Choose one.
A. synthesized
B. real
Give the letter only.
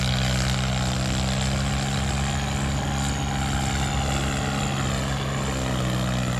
B